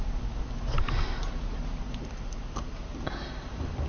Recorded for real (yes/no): yes